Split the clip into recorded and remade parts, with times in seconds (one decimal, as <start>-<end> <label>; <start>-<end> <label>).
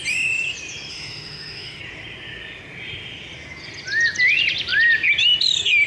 0.0-0.9 recorded; 0.9-1.8 remade; 1.8-5.9 recorded